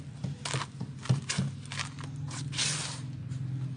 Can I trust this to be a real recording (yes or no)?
yes